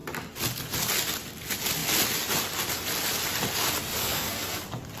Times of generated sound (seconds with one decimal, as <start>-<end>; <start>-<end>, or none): 4.0-4.6